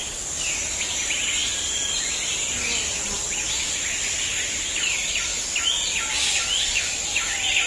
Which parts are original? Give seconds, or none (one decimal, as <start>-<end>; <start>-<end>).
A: 0.0-7.7